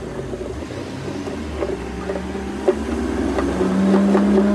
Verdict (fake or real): real